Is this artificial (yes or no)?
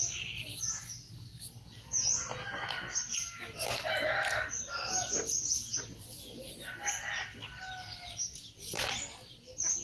no